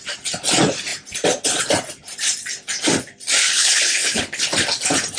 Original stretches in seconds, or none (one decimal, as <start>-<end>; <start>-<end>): 0.0-3.4; 4.4-5.2